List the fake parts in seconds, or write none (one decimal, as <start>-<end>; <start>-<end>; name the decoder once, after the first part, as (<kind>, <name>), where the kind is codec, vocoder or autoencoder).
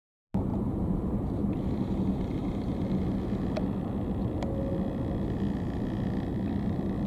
0.5-2.0 (vocoder, BigVGAN v2)